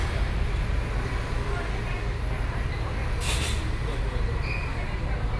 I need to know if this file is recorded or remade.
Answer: recorded